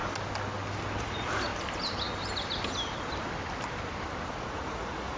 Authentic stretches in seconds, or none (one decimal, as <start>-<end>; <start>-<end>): 0.0-1.0; 1.5-4.3